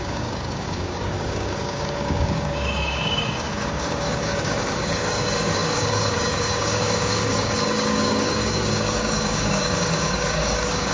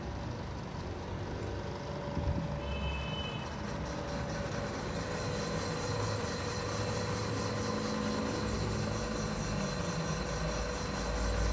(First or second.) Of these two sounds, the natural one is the second